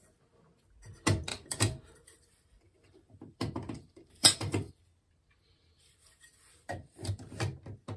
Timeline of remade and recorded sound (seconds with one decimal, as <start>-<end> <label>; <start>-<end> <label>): 0.0-1.3 recorded; 1.3-4.7 remade; 4.7-5.8 recorded; 5.8-7.1 remade; 7.1-8.0 recorded